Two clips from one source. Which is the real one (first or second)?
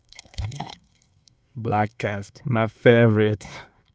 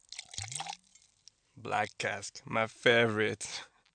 second